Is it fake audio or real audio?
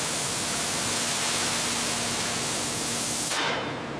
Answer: real